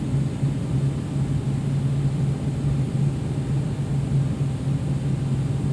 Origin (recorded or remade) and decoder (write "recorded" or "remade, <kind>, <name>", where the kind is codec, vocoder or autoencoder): recorded